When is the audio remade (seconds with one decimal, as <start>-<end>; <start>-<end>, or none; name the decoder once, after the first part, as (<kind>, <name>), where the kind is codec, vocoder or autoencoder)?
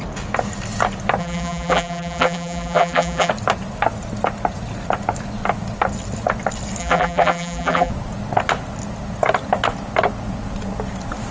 1.2-3.3 (vocoder, BigVGAN v2); 6.8-7.9